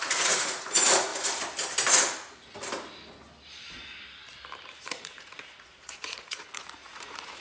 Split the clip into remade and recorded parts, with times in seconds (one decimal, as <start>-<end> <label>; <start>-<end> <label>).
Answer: 0.0-1.1 remade; 1.1-4.7 recorded; 4.7-7.4 remade